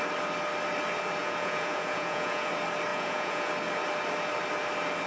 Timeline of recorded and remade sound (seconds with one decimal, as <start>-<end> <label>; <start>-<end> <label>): 0.0-1.2 recorded; 1.2-2.5 remade; 2.5-2.9 recorded; 2.9-3.5 remade; 3.5-5.1 recorded